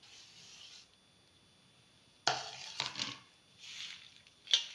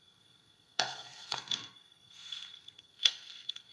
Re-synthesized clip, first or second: second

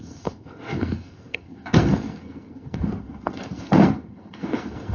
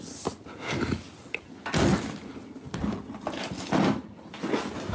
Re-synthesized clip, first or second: first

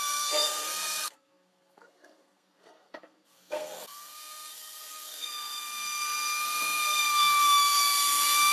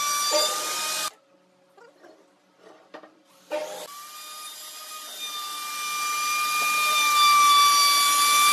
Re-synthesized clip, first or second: first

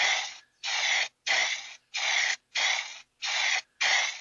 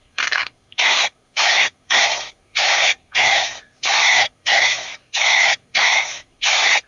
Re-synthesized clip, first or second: second